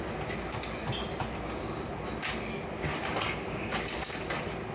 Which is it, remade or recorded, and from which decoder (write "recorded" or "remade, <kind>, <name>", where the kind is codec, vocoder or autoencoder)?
recorded